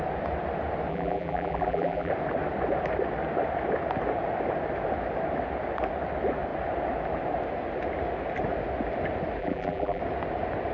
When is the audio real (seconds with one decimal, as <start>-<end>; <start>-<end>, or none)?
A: 0.0-0.9; 2.1-9.4; 10.0-10.7